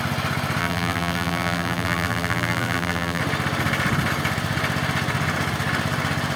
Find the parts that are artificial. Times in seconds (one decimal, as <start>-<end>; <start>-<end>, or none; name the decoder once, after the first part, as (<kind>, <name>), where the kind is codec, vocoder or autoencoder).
0.6-3.2 (vocoder, BigVGAN v2)